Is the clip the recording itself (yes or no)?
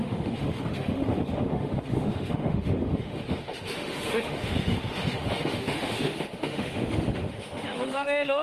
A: no